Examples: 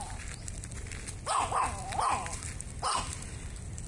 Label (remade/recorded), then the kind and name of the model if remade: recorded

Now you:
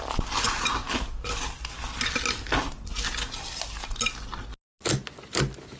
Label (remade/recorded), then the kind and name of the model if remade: recorded